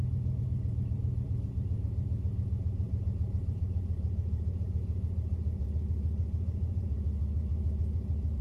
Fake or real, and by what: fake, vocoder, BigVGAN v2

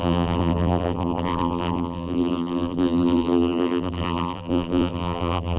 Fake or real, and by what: fake, vocoder, BigVGAN v2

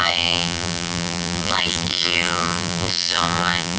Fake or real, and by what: fake, vocoder, BigVGAN v2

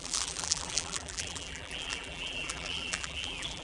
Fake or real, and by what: fake, vocoder, BigVGAN v2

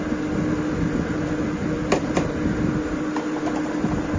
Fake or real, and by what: real